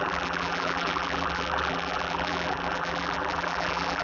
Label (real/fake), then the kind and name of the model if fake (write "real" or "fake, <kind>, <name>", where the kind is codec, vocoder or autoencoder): fake, vocoder, BigVGAN v2